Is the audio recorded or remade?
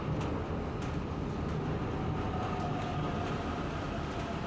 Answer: recorded